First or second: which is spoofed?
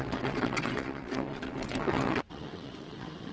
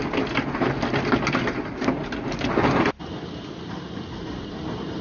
first